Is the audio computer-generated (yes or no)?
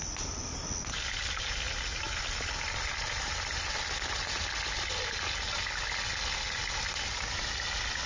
no